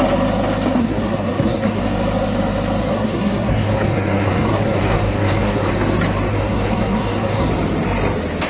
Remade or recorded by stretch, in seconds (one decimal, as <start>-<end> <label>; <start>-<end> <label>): 0.0-0.8 recorded; 0.8-1.8 remade; 1.8-2.9 recorded; 2.9-5.7 remade; 5.7-6.3 recorded; 6.3-7.5 remade; 7.5-8.5 recorded

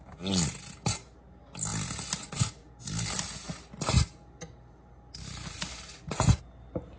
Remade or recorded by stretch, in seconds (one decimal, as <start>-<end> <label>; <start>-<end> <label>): 0.0-7.0 recorded

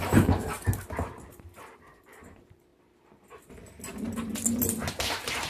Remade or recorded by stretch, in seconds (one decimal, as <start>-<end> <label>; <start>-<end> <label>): 0.0-0.4 remade; 0.4-1.3 recorded; 1.3-2.7 remade; 2.7-4.9 recorded; 4.9-5.5 remade

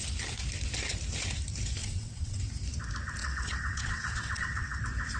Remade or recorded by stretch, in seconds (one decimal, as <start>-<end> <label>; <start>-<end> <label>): 0.0-1.8 recorded; 1.8-2.4 remade; 2.4-3.2 recorded; 3.2-4.8 remade; 4.8-5.2 recorded

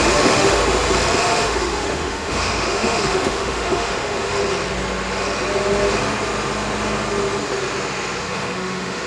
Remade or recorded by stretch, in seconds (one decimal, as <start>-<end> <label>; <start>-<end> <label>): 0.0-0.6 remade; 0.6-1.2 recorded; 1.2-4.4 remade; 4.4-8.2 recorded; 8.2-9.1 remade

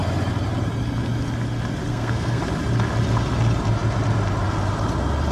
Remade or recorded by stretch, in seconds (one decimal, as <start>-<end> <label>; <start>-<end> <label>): 0.0-1.9 recorded; 1.9-2.4 remade; 2.4-5.3 recorded

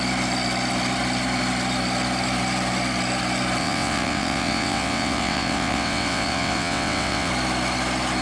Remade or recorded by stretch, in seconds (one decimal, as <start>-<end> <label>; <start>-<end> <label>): 0.0-3.6 recorded; 3.6-7.3 remade; 7.3-8.2 recorded

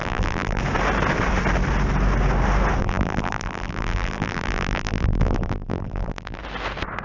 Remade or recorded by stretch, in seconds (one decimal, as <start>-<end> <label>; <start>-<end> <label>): 0.0-0.6 remade; 0.6-2.8 recorded; 2.8-6.4 remade; 6.4-7.0 recorded